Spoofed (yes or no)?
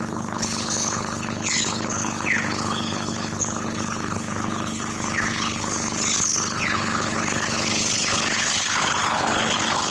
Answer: yes